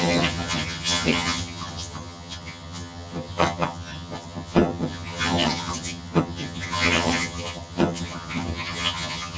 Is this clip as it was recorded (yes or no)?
no